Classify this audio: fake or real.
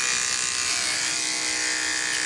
real